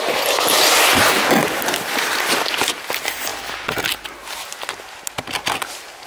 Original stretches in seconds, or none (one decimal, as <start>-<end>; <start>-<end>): 0.0-1.4; 2.6-6.1